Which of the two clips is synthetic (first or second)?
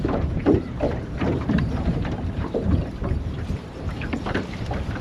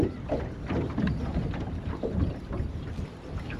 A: first